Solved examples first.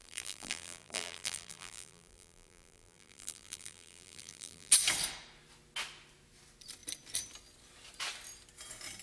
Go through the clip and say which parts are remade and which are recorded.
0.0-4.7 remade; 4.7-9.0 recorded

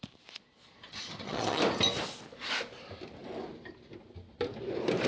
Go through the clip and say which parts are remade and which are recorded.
0.0-0.9 recorded; 0.9-1.6 remade; 1.6-5.1 recorded

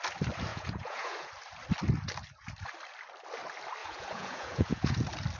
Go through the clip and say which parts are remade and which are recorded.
0.0-0.5 recorded; 0.5-1.3 remade; 1.3-3.8 recorded; 3.8-5.0 remade; 5.0-5.4 recorded

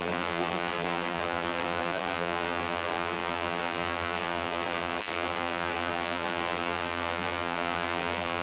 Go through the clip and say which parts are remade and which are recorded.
0.0-8.4 remade

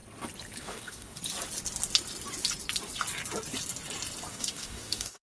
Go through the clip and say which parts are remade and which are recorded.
0.0-0.6 recorded; 0.6-1.2 remade; 1.2-4.3 recorded; 4.3-5.2 remade

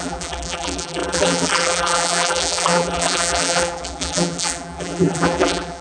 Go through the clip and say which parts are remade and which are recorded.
0.0-5.8 remade